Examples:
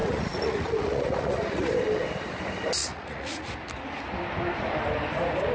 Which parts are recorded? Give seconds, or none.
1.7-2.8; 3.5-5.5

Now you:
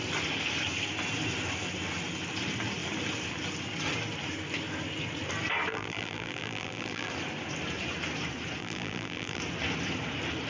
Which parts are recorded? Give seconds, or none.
0.0-5.7; 7.1-8.6; 9.4-10.5

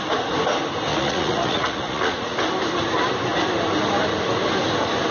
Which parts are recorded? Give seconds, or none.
0.0-0.9; 2.4-5.1

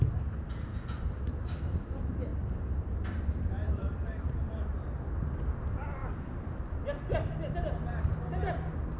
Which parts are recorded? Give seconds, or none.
0.0-0.5; 2.3-3.2; 6.0-9.0